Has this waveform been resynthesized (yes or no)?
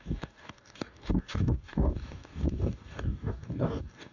yes